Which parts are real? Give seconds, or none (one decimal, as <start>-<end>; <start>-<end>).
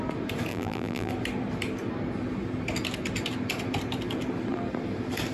0.0-0.5; 1.1-5.3